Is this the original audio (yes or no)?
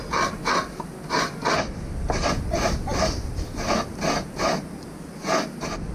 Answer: yes